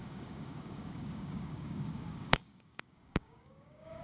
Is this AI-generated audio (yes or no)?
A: yes